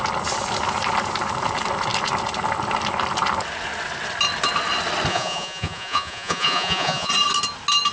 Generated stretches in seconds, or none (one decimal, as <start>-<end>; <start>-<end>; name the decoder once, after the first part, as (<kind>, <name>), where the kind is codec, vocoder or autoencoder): 5.1-7.1 (vocoder, Vocos)